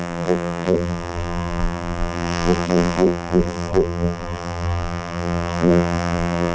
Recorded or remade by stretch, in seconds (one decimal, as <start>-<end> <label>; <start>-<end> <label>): 0.0-6.5 remade